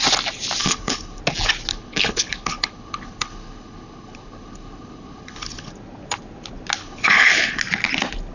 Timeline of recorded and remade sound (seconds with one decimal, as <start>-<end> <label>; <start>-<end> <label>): 0.0-0.6 recorded; 0.6-1.2 remade; 1.2-1.7 recorded; 1.7-5.7 remade; 5.7-6.8 recorded; 6.8-7.6 remade; 7.6-8.3 recorded